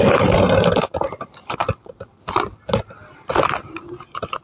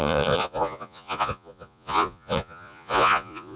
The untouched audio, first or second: first